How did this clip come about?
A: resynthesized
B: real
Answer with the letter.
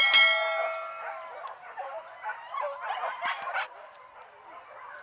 B